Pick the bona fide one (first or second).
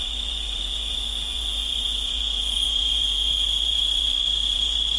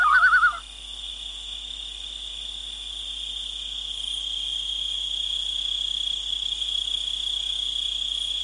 second